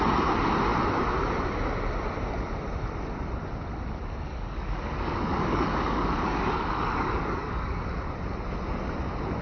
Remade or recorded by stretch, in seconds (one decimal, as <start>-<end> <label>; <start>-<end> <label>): 0.0-4.3 recorded; 4.3-8.0 remade; 8.0-9.4 recorded